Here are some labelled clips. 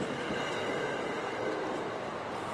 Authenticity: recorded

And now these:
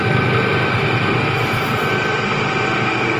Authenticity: recorded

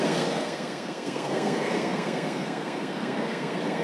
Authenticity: remade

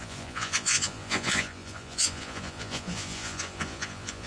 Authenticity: remade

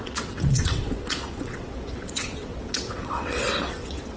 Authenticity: remade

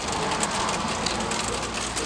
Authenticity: recorded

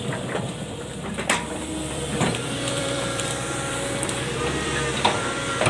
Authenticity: remade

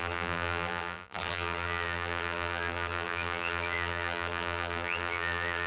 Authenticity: remade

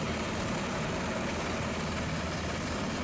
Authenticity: recorded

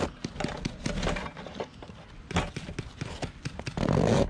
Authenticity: recorded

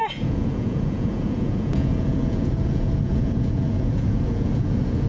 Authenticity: remade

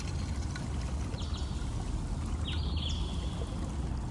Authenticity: recorded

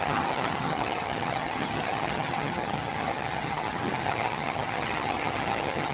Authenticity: remade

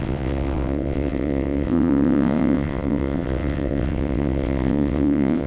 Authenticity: remade